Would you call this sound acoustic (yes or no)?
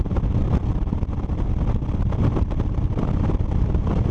yes